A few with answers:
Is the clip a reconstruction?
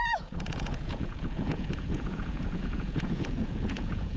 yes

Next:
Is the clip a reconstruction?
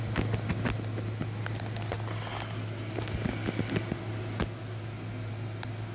no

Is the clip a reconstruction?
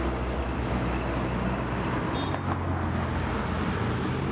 no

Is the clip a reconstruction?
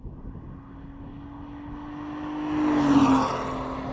no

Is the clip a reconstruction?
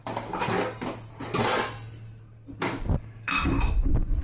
no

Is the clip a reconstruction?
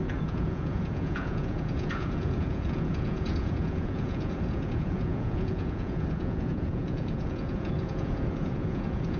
yes